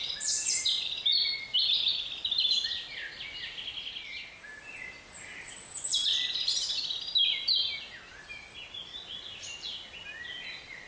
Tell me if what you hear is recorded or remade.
recorded